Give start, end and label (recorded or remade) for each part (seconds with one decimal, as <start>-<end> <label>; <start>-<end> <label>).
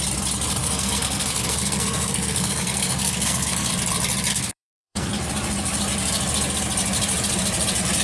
0.0-0.6 recorded; 0.6-3.7 remade; 3.7-4.3 recorded; 4.3-5.1 remade; 5.1-8.0 recorded